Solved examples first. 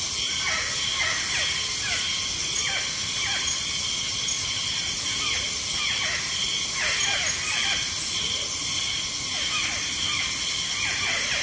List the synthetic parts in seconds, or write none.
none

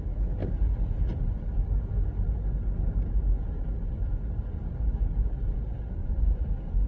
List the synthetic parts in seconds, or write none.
6.0-6.5 (vocoder, Vocos)

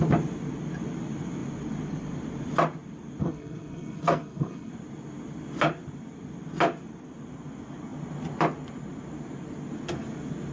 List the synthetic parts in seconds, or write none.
3.2-4.7 (codec, SNAC)